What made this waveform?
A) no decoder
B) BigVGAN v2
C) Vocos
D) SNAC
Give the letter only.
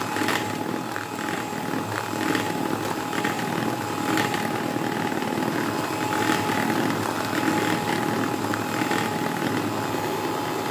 A